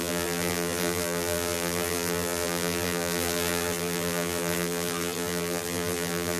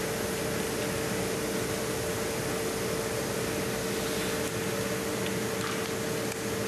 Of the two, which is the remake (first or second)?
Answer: first